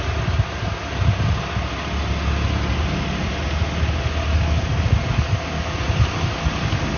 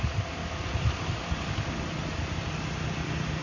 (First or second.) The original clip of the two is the first